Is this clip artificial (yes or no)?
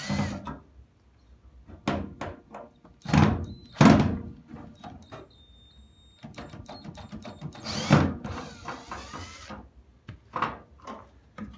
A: no